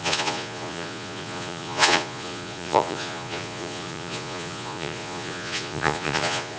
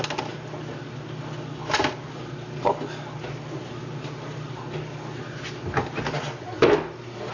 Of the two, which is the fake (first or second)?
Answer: first